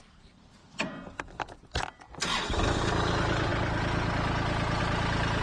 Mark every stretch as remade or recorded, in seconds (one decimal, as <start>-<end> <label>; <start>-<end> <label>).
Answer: 0.0-0.6 remade; 0.6-1.1 recorded; 1.1-3.5 remade; 3.5-4.8 recorded; 4.8-5.4 remade